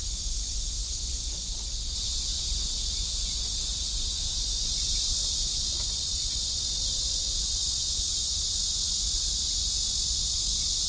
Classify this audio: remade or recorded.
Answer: remade